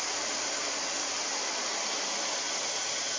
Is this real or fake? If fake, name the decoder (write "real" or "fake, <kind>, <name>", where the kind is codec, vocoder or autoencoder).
fake, vocoder, BigVGAN v2